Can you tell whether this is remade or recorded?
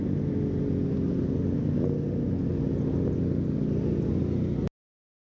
recorded